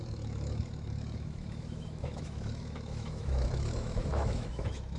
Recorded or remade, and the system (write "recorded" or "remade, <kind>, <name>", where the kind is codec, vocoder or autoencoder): remade, autoencoder, DAC-VAE